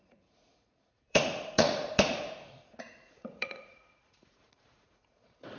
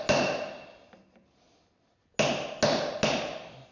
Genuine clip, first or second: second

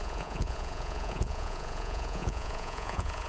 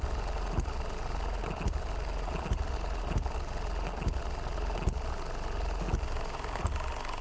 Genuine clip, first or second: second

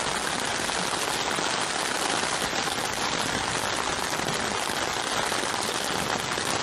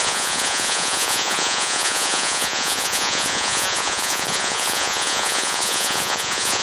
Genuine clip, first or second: first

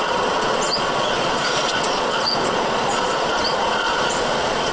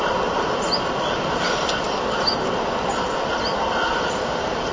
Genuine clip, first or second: second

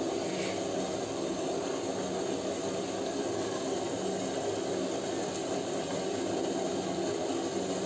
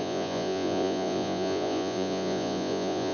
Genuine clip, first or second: first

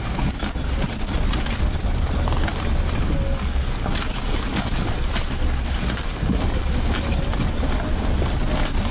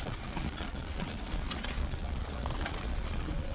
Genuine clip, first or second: first